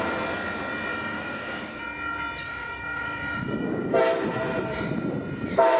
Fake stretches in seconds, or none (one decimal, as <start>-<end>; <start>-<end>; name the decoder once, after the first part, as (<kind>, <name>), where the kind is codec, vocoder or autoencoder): 0.9-1.8 (codec, DAC); 2.4-4.0